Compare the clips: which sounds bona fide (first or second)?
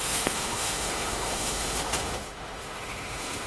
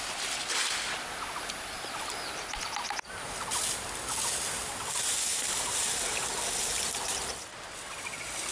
second